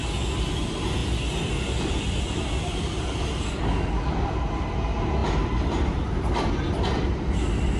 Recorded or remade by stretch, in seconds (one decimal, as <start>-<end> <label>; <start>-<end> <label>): 0.0-7.8 recorded